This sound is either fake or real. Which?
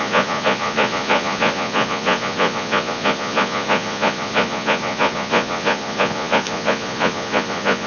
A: fake